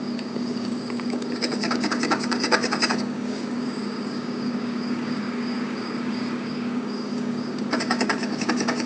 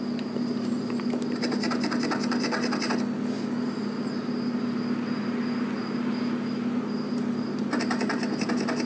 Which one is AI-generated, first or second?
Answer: first